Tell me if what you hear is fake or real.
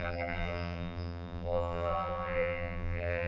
fake